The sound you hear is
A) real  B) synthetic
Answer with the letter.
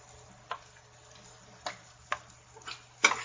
A